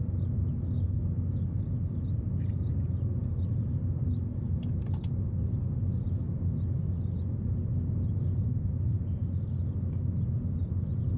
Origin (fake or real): real